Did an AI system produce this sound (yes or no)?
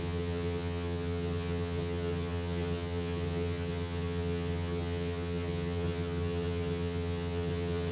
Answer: yes